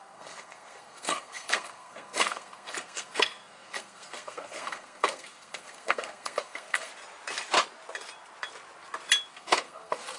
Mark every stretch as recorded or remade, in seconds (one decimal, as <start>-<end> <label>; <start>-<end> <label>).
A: 0.0-6.9 remade; 6.9-9.3 recorded; 9.3-10.2 remade